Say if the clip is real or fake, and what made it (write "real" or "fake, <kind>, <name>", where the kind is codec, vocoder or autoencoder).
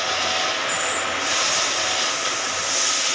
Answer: real